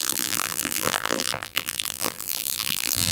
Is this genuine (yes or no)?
no